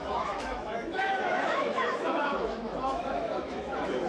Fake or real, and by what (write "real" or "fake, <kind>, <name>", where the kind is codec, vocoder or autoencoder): fake, autoencoder, DAC-VAE